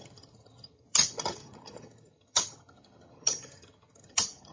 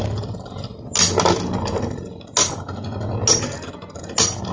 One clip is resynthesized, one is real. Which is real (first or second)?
second